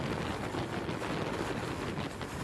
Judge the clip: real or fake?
real